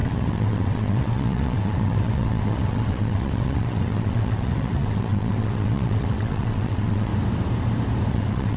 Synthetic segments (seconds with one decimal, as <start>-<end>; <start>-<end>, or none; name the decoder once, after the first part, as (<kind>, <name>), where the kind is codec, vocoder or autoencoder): 0.0-7.1 (vocoder, WaveNeXt); 8.1-8.6